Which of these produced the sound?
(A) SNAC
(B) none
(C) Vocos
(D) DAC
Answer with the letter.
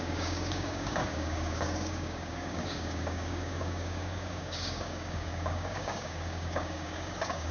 D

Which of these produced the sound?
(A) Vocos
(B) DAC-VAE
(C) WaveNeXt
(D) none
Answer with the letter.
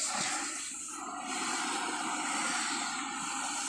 D